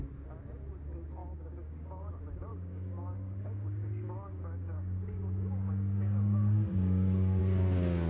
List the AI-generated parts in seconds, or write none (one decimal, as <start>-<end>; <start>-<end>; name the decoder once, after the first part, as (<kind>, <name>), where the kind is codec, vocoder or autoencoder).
1.2-2.1 (codec, DAC); 2.5-7.4